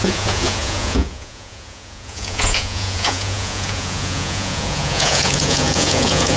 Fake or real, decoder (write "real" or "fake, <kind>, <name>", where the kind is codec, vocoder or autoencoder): fake, vocoder, Vocos